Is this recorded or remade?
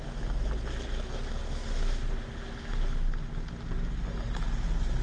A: recorded